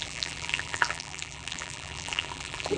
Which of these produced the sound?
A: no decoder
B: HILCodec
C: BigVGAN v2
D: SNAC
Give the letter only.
C